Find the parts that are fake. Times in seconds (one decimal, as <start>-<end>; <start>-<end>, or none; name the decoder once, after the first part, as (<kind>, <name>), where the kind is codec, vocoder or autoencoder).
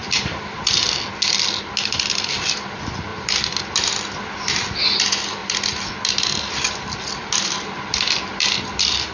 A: 3.1-3.6 (vocoder, BigVGAN v2); 5.4-6.6